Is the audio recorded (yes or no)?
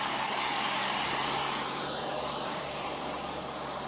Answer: no